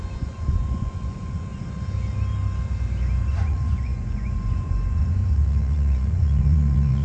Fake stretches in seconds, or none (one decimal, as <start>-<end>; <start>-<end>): 0.0-1.5; 3.3-7.0